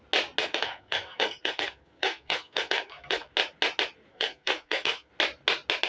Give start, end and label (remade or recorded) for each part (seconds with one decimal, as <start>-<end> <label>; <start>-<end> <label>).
0.0-0.4 recorded; 0.4-3.3 remade; 3.3-4.1 recorded; 4.1-5.1 remade; 5.1-5.9 recorded